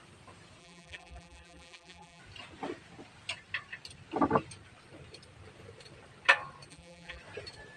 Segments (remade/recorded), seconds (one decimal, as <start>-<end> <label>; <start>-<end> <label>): 0.0-0.6 recorded; 0.6-2.2 remade; 2.2-6.7 recorded; 6.7-7.2 remade; 7.2-7.8 recorded